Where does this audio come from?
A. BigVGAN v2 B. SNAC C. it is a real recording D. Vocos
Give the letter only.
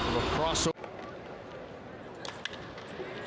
C